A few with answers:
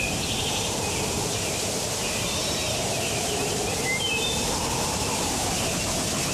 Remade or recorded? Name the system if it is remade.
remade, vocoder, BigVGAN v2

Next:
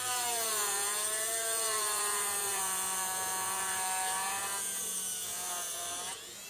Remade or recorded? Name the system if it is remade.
remade, vocoder, Vocos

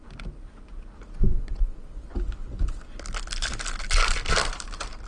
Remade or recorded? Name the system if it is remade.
recorded